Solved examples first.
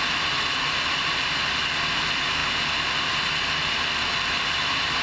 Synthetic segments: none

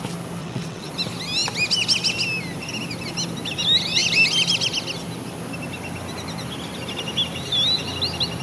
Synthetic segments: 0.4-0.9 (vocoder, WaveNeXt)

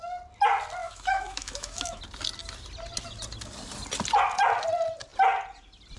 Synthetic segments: 0.8-2.0 (autoencoder, DAC-VAE)

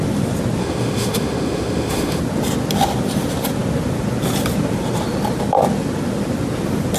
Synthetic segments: 0.6-2.2 (autoencoder, DAC-VAE)

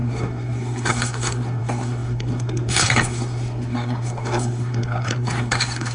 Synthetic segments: 0.0-5.9 (codec, SNAC)

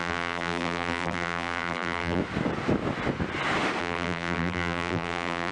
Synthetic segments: 0.0-2.2 (vocoder, BigVGAN v2); 3.8-5.5

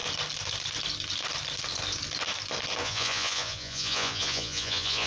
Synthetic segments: 2.8-5.1 (vocoder, Vocos)